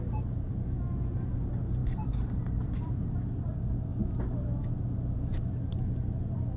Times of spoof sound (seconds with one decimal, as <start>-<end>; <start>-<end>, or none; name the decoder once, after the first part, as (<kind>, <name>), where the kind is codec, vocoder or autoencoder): 0.0-3.9 (vocoder, BigVGAN v2); 4.6-5.3

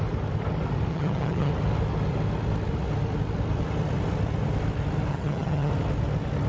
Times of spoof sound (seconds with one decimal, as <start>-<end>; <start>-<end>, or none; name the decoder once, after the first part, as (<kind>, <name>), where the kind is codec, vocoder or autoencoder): 0.9-1.5 (vocoder, HiFi-GAN); 5.1-5.7